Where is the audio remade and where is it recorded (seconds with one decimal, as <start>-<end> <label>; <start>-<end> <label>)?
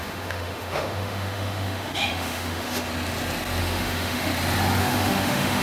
0.0-2.9 remade; 2.9-3.6 recorded; 3.6-4.3 remade; 4.3-4.8 recorded; 4.8-5.6 remade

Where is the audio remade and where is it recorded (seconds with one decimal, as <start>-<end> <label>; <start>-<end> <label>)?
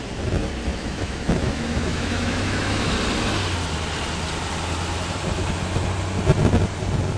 0.0-0.7 recorded; 0.7-2.9 remade; 2.9-7.2 recorded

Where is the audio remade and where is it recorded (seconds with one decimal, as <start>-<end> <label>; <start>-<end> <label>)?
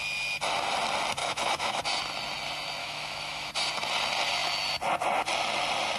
0.0-1.2 recorded; 1.2-1.8 remade; 1.8-2.8 recorded; 2.8-3.5 remade; 3.5-6.0 recorded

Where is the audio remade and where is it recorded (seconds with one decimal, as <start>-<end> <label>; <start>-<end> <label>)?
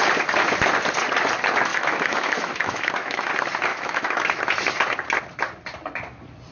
0.0-1.7 recorded; 1.7-3.3 remade; 3.3-3.7 recorded; 3.7-4.4 remade; 4.4-6.5 recorded